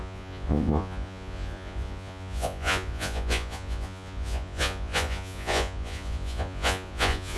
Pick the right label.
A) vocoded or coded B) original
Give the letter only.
A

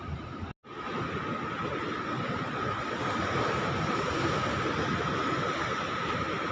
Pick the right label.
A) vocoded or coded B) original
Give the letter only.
B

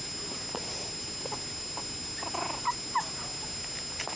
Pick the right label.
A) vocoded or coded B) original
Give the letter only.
B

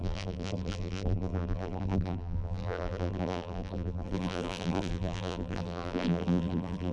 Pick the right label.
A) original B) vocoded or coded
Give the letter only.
B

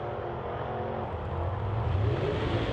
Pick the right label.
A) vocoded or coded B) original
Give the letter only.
B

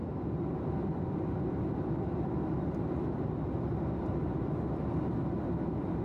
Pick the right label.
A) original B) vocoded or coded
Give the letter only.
A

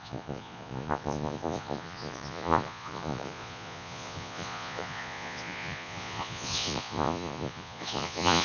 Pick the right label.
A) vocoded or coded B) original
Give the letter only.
A